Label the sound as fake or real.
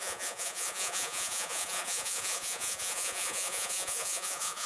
fake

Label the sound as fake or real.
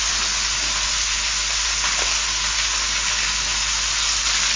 real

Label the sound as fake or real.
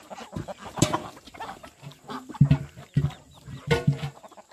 real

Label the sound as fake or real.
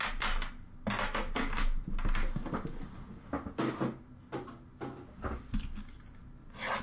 real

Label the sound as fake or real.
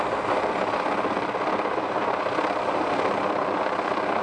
real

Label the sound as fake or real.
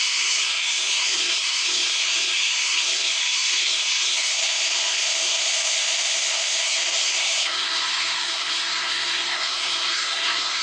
fake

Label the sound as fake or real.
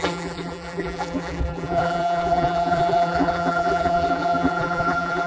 fake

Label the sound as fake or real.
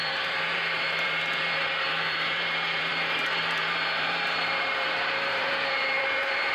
fake